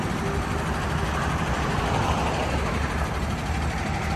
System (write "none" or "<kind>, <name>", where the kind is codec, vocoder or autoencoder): none